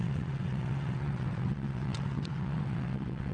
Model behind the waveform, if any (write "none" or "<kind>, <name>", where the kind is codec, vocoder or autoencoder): vocoder, WaveNeXt